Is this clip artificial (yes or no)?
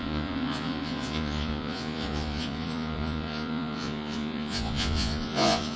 yes